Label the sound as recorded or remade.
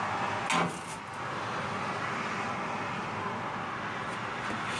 recorded